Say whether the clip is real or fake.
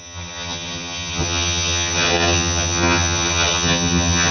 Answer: fake